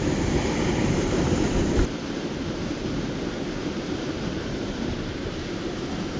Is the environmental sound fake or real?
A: fake